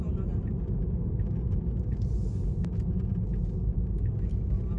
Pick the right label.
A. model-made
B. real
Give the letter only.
B